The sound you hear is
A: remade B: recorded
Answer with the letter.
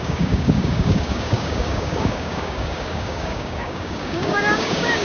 A